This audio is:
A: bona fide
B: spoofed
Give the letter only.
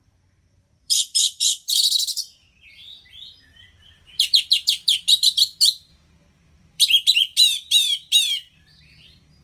B